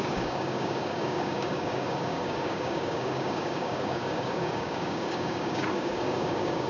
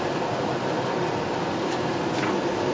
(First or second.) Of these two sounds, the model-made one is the first